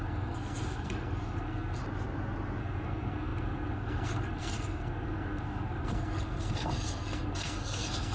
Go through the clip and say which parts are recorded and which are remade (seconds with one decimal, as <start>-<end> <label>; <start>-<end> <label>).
0.0-1.8 remade; 1.8-2.6 recorded; 2.6-8.1 remade